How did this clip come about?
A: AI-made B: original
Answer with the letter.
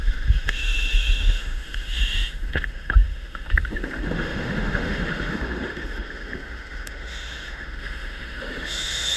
A